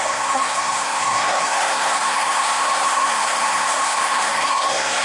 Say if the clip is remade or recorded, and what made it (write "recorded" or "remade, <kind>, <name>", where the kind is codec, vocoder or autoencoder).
remade, codec, SNAC